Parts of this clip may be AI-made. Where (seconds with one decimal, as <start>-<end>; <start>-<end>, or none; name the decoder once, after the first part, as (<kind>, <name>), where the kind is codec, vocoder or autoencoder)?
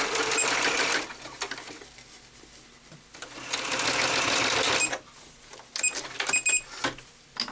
none